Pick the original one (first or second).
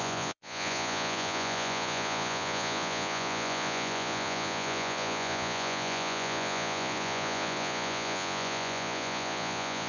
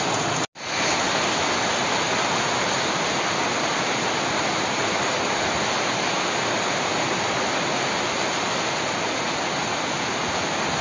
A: second